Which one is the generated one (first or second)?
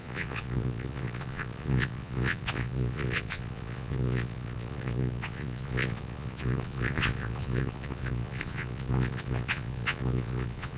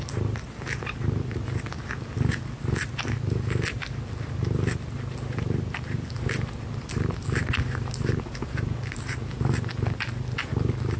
first